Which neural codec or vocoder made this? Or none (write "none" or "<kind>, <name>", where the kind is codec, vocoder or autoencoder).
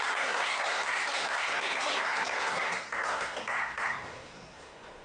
codec, SNAC